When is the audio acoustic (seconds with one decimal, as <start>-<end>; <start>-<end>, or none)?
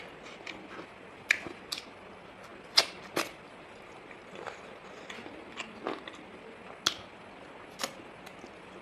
0.0-8.8